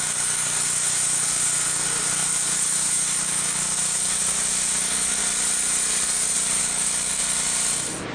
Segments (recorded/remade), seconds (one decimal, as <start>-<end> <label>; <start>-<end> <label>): 0.0-5.2 remade; 5.2-6.6 recorded; 6.6-7.2 remade; 7.2-8.1 recorded